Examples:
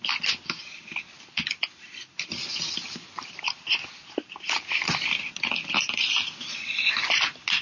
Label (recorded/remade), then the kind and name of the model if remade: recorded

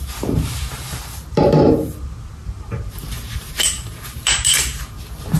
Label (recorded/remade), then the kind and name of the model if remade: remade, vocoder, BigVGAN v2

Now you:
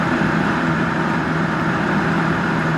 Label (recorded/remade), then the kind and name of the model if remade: remade, vocoder, BigVGAN v2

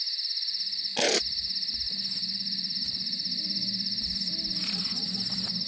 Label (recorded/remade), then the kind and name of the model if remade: recorded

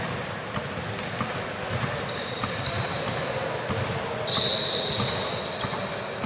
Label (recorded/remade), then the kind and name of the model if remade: recorded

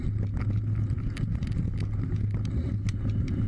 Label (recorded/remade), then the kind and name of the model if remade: recorded